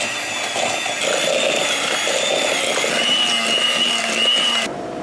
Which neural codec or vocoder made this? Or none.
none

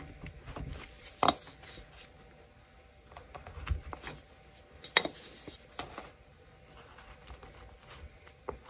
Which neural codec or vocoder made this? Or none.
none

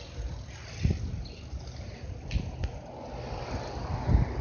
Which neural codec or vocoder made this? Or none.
none